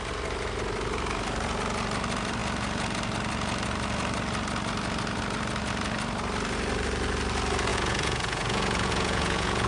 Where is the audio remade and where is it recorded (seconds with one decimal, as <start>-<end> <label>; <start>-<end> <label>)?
0.0-7.7 recorded; 7.7-9.7 remade